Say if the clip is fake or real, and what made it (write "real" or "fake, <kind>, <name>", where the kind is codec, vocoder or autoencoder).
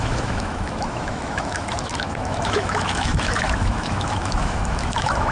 fake, autoencoder, DAC-VAE